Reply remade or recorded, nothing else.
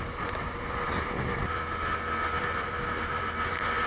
remade